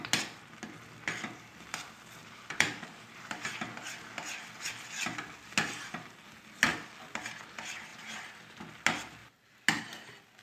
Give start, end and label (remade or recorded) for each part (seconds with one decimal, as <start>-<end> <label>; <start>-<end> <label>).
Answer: 0.0-2.2 recorded; 2.2-3.5 remade; 3.5-7.9 recorded; 7.9-8.6 remade; 8.6-10.4 recorded